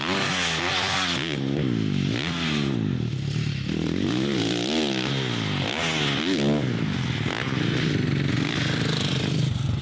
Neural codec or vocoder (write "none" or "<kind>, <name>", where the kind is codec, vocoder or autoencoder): none